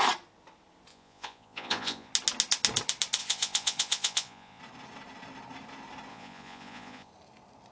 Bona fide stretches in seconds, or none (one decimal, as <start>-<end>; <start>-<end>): 0.0-0.9; 2.1-3.2; 4.6-6.1; 7.1-7.7